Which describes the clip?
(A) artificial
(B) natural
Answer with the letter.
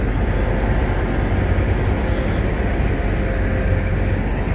B